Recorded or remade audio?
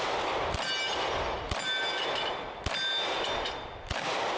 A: recorded